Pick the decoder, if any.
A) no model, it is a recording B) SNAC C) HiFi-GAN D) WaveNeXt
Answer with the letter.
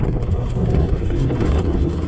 B